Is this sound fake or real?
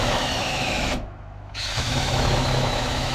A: fake